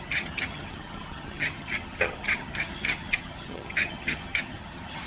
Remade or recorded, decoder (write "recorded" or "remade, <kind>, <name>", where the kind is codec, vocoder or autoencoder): remade, vocoder, HiFi-GAN